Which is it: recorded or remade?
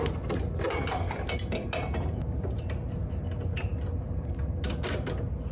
recorded